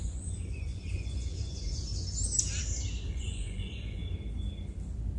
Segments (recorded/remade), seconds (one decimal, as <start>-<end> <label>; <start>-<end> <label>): 0.0-1.9 remade; 1.9-3.1 recorded; 3.1-4.0 remade; 4.0-5.2 recorded